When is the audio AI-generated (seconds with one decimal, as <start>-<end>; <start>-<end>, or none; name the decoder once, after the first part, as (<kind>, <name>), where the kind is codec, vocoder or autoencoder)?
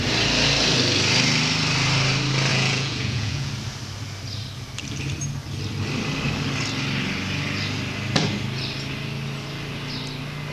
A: 2.5-3.5 (vocoder, Vocos)